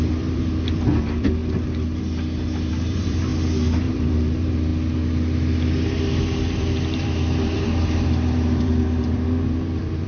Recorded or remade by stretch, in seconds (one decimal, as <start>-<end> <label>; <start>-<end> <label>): 0.0-1.4 remade; 1.4-2.7 recorded; 2.7-3.3 remade; 3.3-3.9 recorded; 3.9-4.7 remade; 4.7-6.6 recorded; 6.6-10.1 remade